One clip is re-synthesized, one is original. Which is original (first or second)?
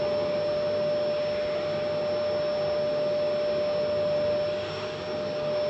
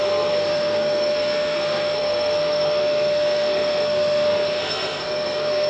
first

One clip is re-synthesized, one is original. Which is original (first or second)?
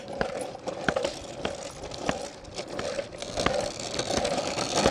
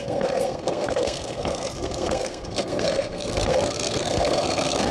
first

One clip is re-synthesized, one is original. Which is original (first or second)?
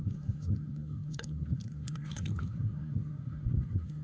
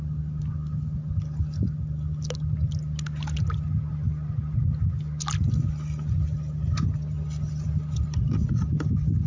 second